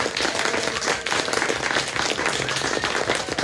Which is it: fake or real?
real